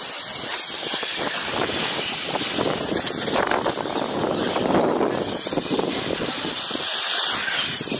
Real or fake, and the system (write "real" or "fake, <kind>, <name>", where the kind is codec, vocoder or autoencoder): real